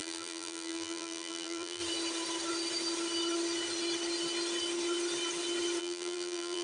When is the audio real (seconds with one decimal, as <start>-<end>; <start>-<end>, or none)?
1.8-5.8